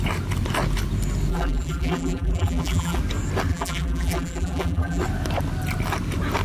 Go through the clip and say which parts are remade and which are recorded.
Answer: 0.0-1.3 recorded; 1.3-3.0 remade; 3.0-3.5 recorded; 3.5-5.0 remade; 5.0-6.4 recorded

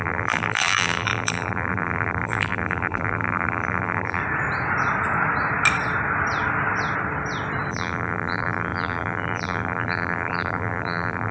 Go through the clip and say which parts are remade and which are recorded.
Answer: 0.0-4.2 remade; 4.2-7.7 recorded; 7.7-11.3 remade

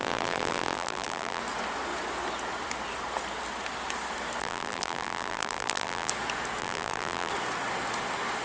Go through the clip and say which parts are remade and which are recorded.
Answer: 0.0-1.4 remade; 1.4-4.4 recorded; 4.4-6.1 remade; 6.1-6.6 recorded; 6.6-7.3 remade; 7.3-8.4 recorded

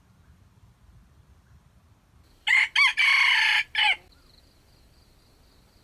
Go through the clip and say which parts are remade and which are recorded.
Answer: 0.0-2.9 recorded; 2.9-5.2 remade; 5.2-5.8 recorded